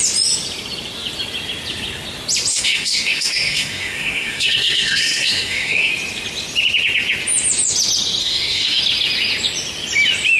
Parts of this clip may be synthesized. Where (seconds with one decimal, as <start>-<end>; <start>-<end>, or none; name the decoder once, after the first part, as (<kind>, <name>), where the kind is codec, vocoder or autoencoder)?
2.5-5.9 (codec, SNAC); 8.2-8.8